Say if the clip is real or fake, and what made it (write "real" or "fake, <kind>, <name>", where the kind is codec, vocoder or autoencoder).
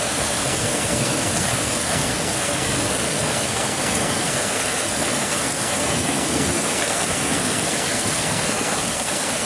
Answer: fake, codec, SNAC